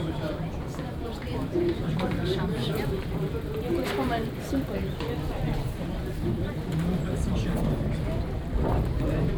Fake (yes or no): yes